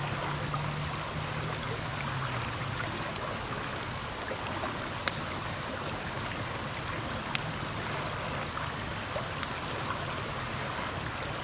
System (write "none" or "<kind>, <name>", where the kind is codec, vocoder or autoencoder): none